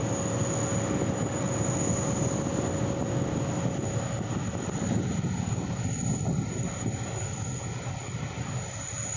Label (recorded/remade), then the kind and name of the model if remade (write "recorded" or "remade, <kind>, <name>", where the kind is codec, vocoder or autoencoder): recorded